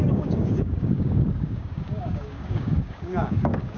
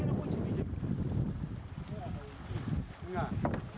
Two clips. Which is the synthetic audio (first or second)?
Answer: first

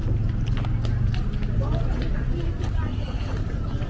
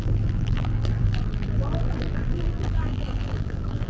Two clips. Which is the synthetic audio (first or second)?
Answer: second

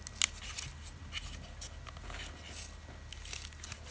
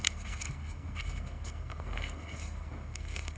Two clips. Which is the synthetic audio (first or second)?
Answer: second